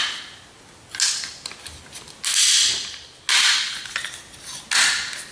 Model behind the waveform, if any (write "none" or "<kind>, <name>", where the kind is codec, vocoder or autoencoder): none